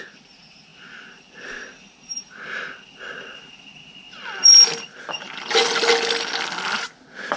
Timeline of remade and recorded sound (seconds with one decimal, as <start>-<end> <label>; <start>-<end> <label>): 0.0-7.4 recorded